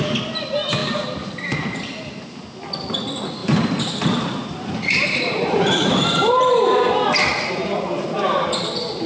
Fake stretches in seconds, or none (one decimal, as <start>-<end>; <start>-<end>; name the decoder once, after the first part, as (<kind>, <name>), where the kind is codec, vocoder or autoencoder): 3.4-6.5 (vocoder, BigVGAN v2); 7.3-8.6